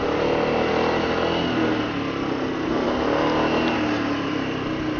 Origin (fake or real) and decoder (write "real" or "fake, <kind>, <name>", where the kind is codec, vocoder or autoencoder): real